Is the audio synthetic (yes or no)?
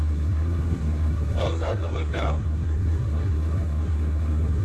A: yes